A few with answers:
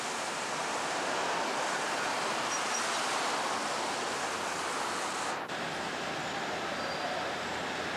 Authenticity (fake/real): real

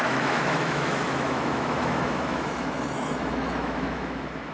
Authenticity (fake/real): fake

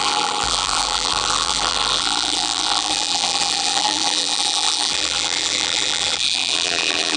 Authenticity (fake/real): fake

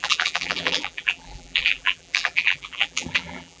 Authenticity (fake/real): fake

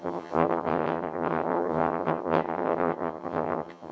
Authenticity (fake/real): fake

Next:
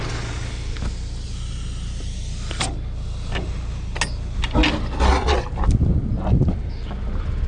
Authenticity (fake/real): real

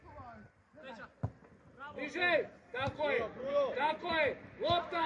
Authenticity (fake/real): real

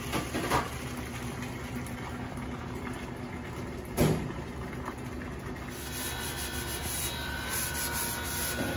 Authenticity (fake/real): real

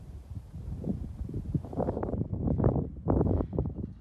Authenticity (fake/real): fake